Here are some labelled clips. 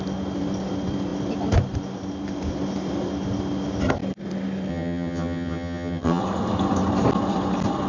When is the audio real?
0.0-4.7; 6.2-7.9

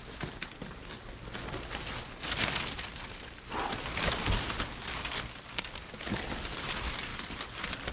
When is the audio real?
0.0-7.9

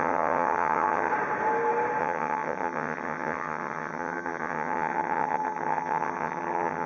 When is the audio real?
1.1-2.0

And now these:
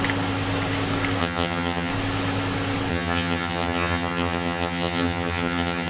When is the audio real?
0.0-1.2; 1.9-2.9